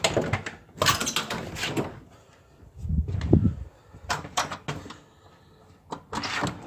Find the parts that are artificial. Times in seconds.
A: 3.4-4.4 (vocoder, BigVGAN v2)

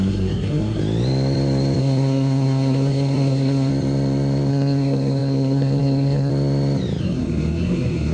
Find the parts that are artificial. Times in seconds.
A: 0.0-0.8 (codec, SNAC); 1.8-3.7; 4.5-6.3; 7.0-8.1

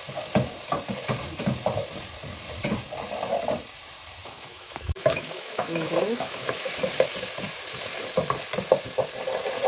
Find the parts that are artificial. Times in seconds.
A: 4.2-6.7 (autoencoder, DAC-VAE)

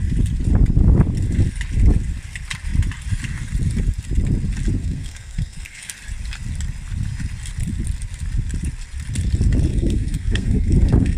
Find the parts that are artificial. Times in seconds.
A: 4.8-5.9 (codec, SNAC); 9.7-11.2

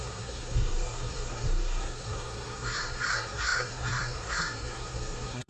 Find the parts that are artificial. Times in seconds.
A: 0.0-5.5 (codec, SNAC)

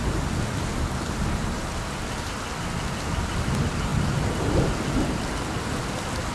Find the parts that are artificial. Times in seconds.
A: none

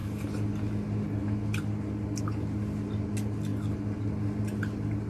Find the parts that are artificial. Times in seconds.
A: none